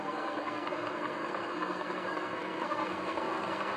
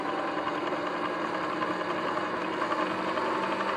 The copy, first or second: first